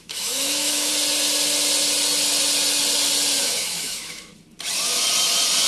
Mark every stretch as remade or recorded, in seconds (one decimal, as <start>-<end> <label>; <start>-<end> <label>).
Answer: 0.0-0.9 remade; 0.9-3.4 recorded; 3.4-4.3 remade; 4.3-5.7 recorded